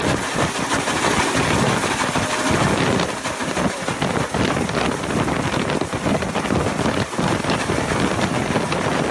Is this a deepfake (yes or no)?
no